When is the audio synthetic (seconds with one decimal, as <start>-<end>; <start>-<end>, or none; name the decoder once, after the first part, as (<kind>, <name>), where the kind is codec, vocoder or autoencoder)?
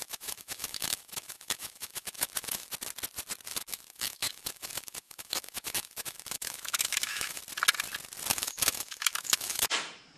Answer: 0.0-2.7 (autoencoder, DAC-VAE); 3.5-7.4; 8.3-9.7